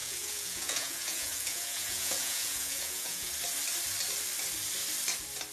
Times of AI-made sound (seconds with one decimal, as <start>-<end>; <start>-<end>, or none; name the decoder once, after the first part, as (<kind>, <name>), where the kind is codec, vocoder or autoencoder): 0.0-3.3 (vocoder, Vocos)